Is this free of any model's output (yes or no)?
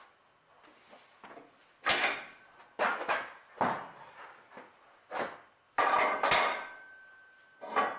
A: yes